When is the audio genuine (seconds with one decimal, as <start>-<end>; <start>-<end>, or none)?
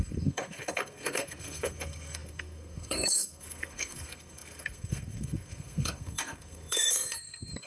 none